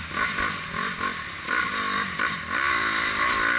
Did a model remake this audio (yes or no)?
no